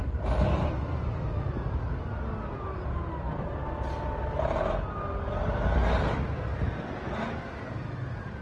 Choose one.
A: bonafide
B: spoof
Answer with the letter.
A